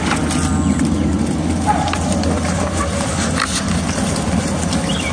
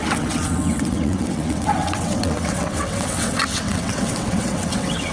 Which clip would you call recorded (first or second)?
first